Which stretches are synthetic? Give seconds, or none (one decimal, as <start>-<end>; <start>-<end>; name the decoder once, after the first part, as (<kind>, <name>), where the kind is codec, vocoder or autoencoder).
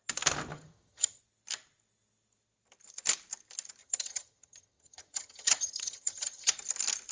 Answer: 0.5-1.2 (vocoder, HiFi-GAN); 3.8-6.5